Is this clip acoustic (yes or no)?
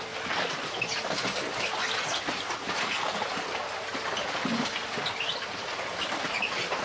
yes